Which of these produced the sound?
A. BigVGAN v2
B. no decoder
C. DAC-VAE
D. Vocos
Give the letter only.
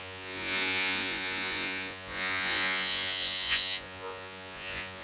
D